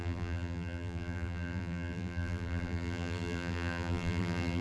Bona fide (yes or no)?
no